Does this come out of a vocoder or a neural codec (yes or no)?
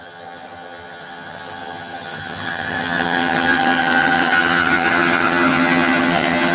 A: yes